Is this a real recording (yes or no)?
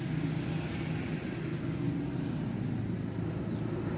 yes